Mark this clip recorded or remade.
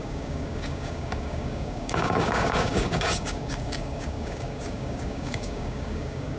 remade